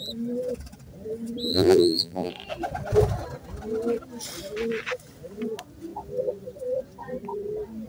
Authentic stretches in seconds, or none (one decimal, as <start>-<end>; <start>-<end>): 0.0-1.5; 2.3-7.9